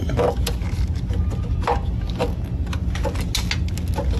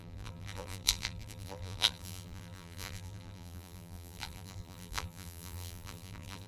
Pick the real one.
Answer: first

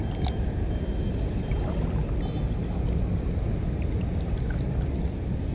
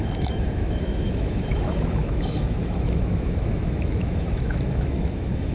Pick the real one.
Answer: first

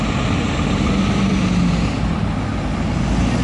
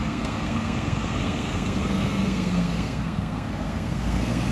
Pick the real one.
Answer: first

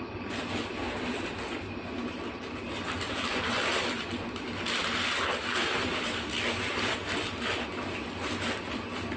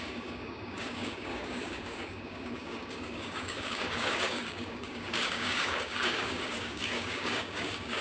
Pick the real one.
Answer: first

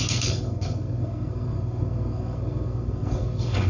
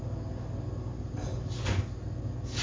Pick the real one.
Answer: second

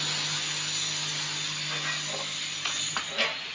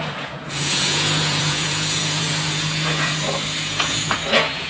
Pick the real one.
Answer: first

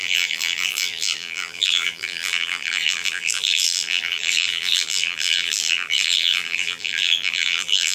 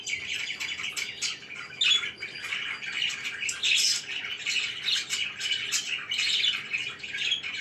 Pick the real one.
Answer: second